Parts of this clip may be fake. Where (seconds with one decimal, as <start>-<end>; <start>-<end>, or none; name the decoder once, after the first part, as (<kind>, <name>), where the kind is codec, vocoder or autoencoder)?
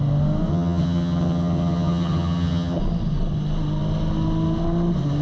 0.5-2.8 (vocoder, HiFi-GAN)